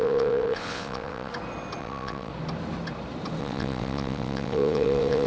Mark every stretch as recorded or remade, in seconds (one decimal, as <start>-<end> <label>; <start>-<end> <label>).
0.0-1.3 remade; 1.3-1.8 recorded; 1.8-2.3 remade; 2.3-3.4 recorded; 3.4-5.3 remade